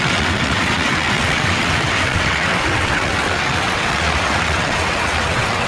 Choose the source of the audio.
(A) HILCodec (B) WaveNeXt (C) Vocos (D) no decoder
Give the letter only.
B